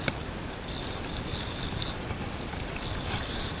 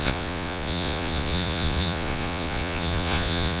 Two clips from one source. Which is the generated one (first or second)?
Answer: second